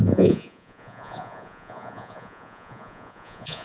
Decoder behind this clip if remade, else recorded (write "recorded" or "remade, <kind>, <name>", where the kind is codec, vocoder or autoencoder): remade, vocoder, Vocos